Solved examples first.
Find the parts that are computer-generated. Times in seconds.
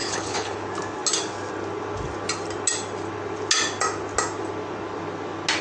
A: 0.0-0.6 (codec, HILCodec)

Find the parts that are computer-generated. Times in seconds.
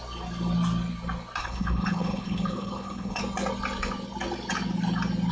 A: 1.4-3.2 (codec, HILCodec)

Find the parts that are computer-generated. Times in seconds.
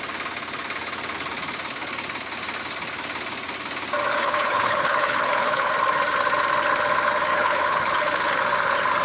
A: 4.1-5.7 (codec, HILCodec); 7.3-8.4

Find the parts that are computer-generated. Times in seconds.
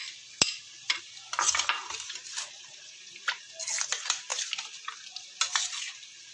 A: none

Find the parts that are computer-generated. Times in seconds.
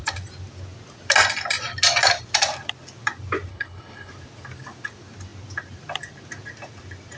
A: 3.5-4.1 (codec, HILCodec)